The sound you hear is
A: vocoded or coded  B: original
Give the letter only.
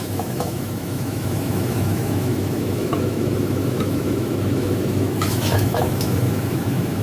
A